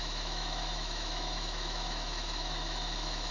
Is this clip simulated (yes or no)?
yes